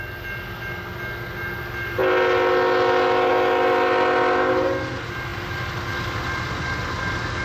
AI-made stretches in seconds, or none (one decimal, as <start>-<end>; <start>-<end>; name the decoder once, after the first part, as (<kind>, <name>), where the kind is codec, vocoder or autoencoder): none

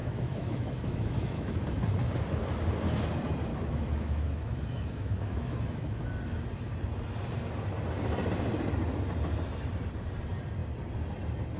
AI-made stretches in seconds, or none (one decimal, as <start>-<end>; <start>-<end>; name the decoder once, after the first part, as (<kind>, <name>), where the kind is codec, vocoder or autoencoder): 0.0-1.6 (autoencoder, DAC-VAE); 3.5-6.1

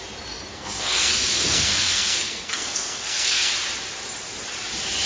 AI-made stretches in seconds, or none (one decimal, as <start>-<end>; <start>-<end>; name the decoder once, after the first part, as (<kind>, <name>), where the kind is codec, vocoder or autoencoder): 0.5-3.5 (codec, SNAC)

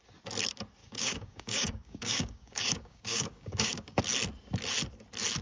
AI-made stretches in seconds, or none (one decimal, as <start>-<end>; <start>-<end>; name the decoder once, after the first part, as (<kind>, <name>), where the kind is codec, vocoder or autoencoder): 0.8-4.0 (codec, DAC)